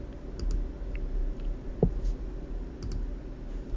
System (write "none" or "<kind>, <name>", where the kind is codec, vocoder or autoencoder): none